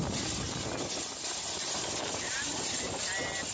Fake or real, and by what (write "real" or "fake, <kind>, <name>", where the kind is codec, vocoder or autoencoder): real